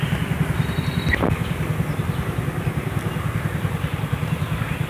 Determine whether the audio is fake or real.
real